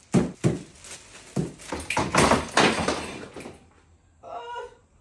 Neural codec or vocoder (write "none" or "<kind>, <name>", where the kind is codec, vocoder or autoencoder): none